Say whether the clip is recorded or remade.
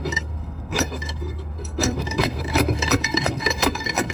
remade